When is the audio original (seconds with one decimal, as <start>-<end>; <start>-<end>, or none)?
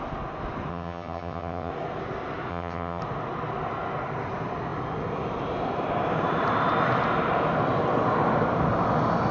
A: 0.0-0.7; 1.7-2.5; 3.0-9.3